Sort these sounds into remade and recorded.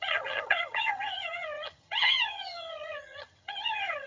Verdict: remade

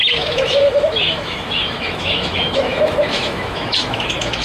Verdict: remade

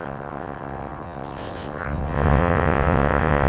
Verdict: remade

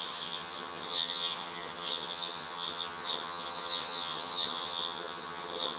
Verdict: remade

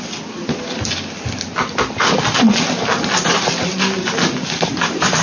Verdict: recorded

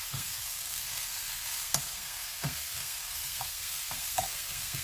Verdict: remade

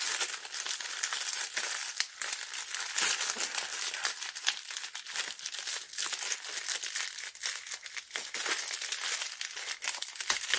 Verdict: recorded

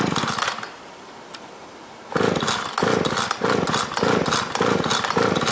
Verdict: recorded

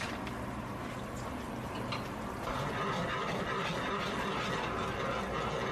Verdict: recorded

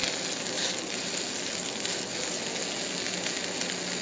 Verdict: recorded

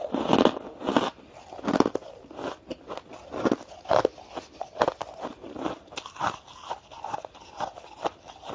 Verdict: recorded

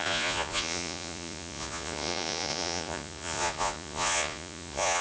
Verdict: remade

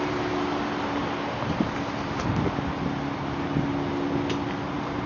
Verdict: recorded